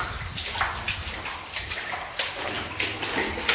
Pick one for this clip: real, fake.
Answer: real